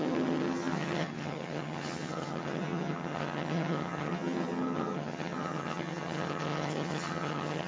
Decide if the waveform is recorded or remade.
remade